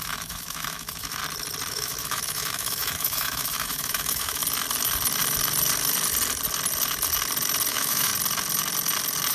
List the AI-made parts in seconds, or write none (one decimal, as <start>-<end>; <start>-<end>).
0.0-1.2; 1.7-4.4; 7.7-8.1